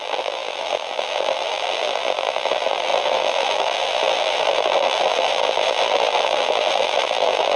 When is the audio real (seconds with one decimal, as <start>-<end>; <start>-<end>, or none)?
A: none